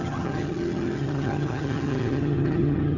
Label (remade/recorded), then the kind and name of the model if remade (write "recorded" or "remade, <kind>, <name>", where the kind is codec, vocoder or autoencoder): remade, vocoder, HiFi-GAN